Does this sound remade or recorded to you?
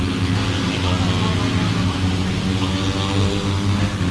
recorded